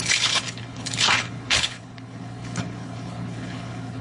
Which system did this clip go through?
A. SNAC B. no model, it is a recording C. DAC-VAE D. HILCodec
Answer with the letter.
D